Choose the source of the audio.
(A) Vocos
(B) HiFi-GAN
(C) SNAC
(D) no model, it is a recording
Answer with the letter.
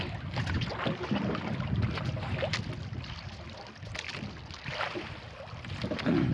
D